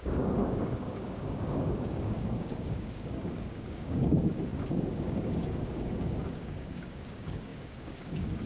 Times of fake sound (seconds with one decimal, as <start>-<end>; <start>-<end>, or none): 0.0-8.5